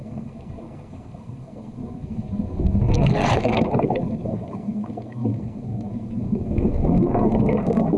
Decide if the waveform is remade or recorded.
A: remade